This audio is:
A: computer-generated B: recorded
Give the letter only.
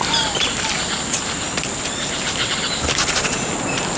B